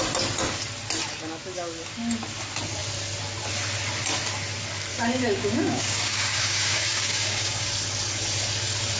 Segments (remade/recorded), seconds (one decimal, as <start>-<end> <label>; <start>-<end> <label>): 0.0-4.9 recorded; 4.9-7.7 remade; 7.7-9.0 recorded